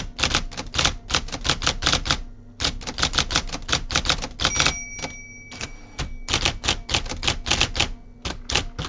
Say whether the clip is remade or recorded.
recorded